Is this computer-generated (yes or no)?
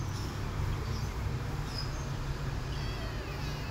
no